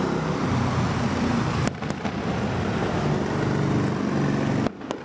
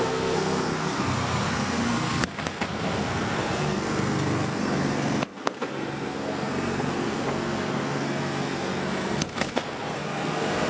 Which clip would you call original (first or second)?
first